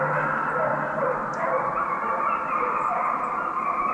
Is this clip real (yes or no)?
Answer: no